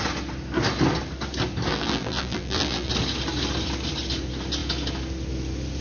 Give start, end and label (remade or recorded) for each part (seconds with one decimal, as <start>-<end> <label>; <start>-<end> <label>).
0.0-1.7 recorded; 1.7-2.9 remade; 2.9-5.8 recorded